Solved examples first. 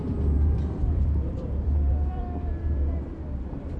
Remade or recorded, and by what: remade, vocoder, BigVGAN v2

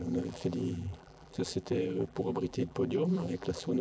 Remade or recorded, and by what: remade, vocoder, BigVGAN v2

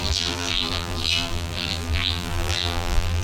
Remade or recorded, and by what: remade, vocoder, BigVGAN v2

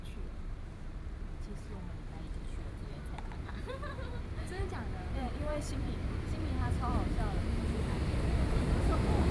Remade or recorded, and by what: remade, vocoder, BigVGAN v2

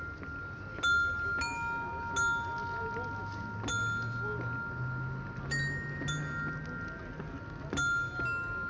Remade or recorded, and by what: recorded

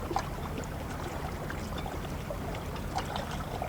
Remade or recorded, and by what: remade, vocoder, BigVGAN v2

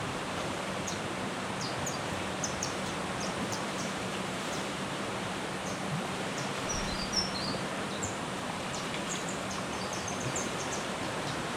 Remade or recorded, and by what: remade, vocoder, BigVGAN v2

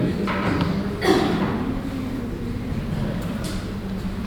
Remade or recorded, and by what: remade, vocoder, BigVGAN v2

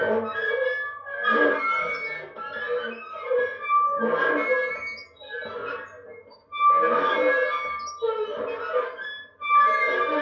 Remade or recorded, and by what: recorded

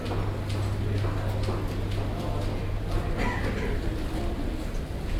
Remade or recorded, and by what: recorded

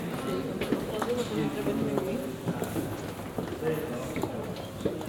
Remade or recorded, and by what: recorded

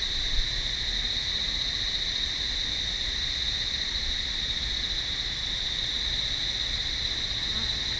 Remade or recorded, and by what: recorded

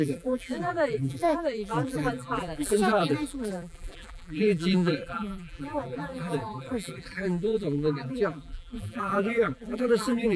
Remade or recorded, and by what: remade, vocoder, BigVGAN v2